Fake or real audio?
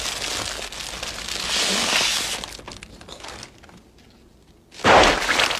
real